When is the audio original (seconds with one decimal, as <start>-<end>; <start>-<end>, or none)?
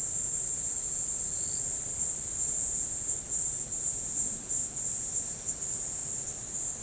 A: 0.0-1.3; 2.9-6.0